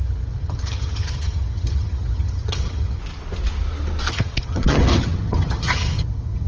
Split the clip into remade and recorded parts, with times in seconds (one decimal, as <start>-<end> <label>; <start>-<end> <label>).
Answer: 0.0-3.0 remade; 3.0-4.1 recorded; 4.1-6.5 remade